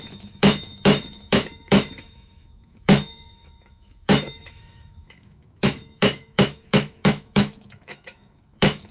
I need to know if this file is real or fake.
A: fake